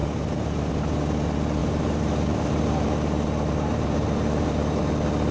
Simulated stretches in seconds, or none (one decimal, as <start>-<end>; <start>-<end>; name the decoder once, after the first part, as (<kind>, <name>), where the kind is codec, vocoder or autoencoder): 0.0-0.7 (vocoder, BigVGAN v2); 1.6-4.8